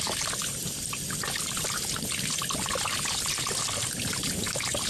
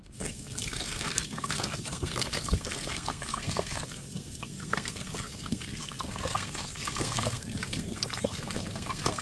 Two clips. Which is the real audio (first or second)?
first